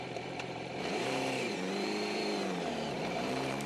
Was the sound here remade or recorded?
remade